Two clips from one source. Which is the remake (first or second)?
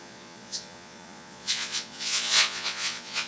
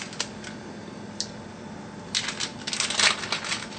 first